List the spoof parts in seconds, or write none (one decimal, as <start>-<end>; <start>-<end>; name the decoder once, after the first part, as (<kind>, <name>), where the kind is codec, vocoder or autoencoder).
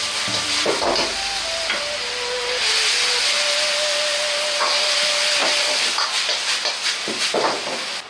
none